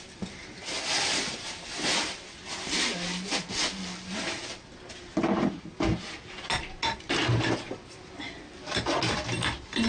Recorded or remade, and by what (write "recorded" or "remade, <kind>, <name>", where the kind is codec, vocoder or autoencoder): recorded